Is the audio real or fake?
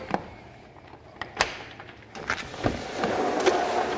real